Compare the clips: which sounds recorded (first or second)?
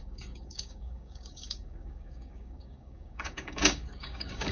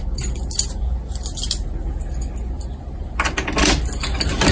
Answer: second